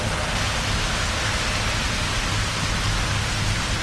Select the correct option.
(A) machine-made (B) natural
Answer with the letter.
B